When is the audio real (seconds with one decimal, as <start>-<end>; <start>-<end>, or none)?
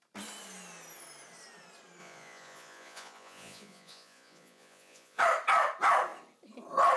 0.0-2.0; 5.2-7.0